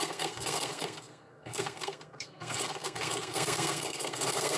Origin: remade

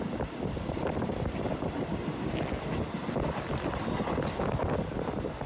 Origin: recorded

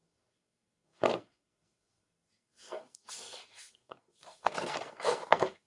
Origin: remade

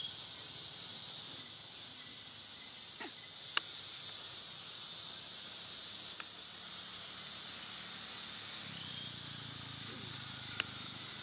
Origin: recorded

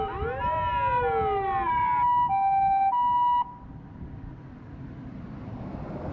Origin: recorded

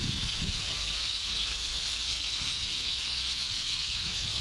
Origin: remade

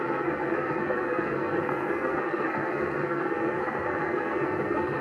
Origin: remade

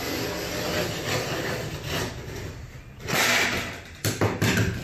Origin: recorded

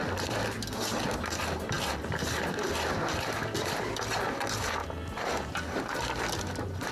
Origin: recorded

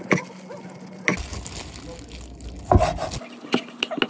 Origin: recorded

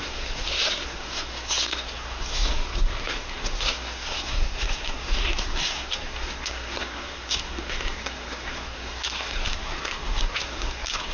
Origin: remade